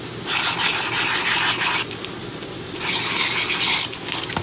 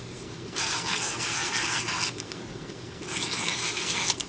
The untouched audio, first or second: first